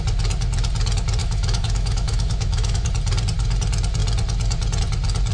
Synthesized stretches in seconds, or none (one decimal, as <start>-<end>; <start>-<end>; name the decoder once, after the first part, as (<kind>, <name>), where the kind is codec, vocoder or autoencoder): 1.2-2.9 (autoencoder, DAC-VAE)